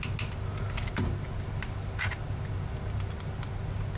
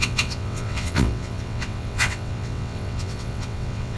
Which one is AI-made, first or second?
second